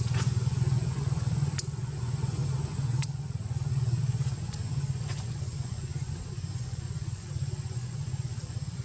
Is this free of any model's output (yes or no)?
no